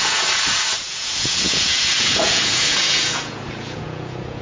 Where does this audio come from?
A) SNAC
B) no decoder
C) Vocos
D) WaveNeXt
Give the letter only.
C